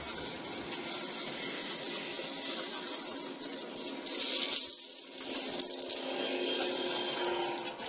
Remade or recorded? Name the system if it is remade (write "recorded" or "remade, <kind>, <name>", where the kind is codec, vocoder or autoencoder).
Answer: recorded